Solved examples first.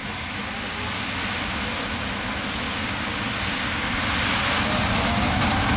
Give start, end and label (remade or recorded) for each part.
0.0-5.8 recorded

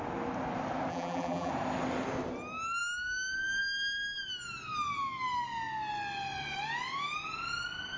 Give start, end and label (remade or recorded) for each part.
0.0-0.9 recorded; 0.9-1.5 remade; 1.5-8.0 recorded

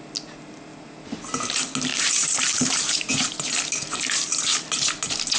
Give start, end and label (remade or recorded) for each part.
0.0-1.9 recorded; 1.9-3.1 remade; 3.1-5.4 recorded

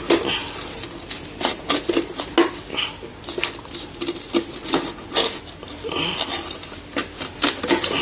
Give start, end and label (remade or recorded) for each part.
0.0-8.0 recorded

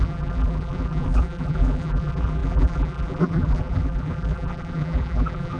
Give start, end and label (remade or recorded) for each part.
0.0-5.6 remade

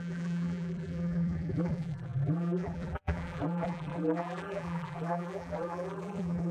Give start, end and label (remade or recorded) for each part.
0.0-6.5 remade